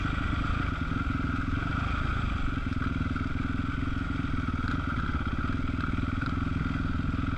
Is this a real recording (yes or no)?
yes